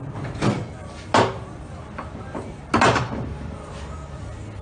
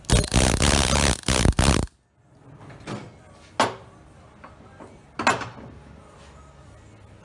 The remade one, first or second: first